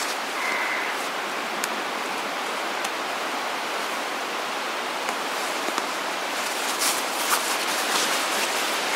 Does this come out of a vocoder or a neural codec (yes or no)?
yes